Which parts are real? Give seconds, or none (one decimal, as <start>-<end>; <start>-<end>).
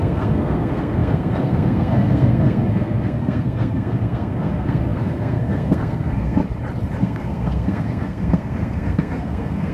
6.4-7.0